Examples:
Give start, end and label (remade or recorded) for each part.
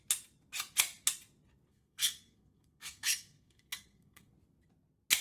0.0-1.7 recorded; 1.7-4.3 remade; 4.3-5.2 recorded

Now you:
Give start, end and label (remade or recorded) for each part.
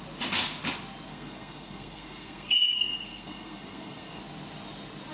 0.0-1.1 recorded; 1.1-4.2 remade; 4.2-5.1 recorded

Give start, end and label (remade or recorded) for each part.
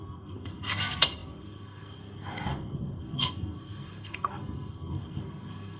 0.0-5.8 remade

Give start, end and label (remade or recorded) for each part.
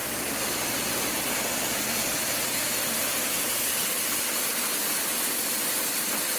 0.0-6.4 recorded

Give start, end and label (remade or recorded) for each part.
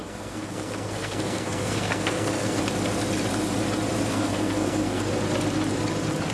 0.0-2.6 remade; 2.6-4.1 recorded; 4.1-5.0 remade; 5.0-6.3 recorded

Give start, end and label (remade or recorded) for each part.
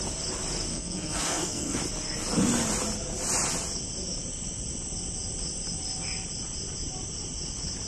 0.0-0.7 recorded; 0.7-1.8 remade; 1.8-7.9 recorded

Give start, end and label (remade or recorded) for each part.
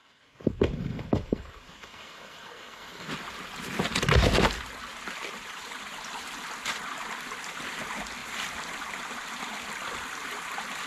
0.0-3.1 remade; 3.1-10.9 recorded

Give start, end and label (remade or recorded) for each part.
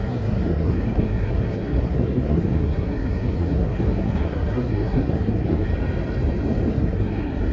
0.0-5.7 remade; 5.7-6.7 recorded; 6.7-7.5 remade